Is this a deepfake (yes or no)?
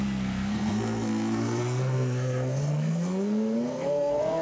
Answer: yes